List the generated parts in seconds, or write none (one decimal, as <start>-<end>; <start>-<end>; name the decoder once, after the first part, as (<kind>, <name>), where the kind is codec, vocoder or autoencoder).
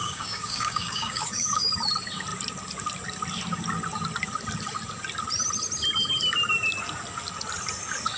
0.0-1.7 (codec, DAC)